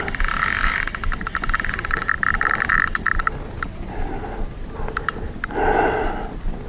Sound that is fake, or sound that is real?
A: real